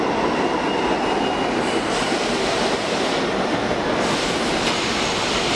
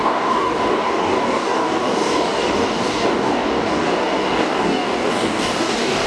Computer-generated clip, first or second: second